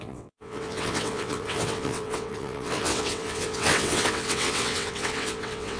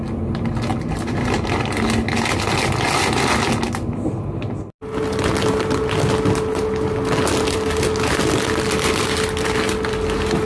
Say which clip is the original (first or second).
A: second